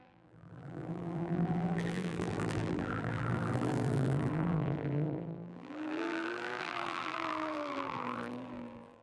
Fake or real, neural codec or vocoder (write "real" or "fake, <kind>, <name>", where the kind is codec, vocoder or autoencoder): fake, vocoder, BigVGAN v2